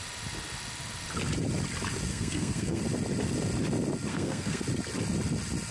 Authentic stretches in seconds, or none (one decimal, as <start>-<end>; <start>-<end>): 0.0-2.1; 2.8-4.1; 4.6-5.7

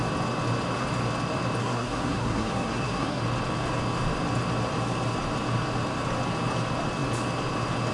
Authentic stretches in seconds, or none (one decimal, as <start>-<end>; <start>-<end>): 0.0-1.6; 3.2-7.9

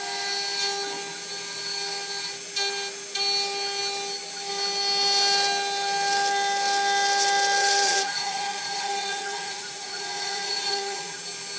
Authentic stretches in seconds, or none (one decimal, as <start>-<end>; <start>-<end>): 0.0-7.6; 11.2-11.6

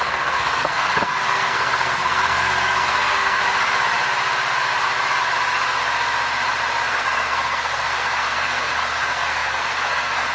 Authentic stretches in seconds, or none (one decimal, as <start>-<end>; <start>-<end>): 3.4-6.9

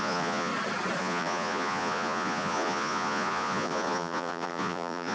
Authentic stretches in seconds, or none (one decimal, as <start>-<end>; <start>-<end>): 0.5-1.0

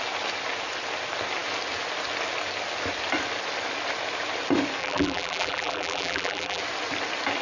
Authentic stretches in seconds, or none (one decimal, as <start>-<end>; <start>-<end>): 0.0-4.8; 6.6-7.4

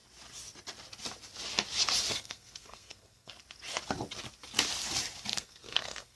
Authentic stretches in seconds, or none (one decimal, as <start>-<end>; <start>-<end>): 0.0-2.1; 3.3-5.3

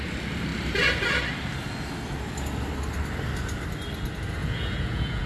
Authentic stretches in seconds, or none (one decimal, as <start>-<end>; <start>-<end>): 0.0-4.4